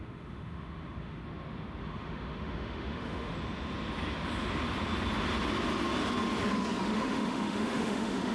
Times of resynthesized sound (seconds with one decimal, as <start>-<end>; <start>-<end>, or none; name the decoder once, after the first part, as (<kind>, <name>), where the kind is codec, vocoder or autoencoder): 0.0-1.2 (autoencoder, DAC-VAE); 1.8-3.3; 6.8-8.3